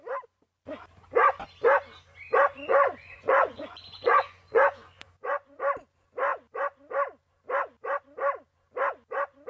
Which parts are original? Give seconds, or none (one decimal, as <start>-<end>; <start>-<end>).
0.0-2.7; 5.6-9.5

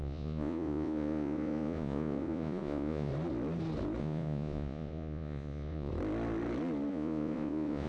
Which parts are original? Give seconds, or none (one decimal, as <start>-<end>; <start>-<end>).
3.1-4.0; 5.9-6.9

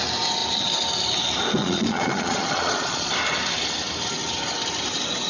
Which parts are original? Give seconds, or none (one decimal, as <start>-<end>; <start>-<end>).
0.0-1.6; 3.1-5.3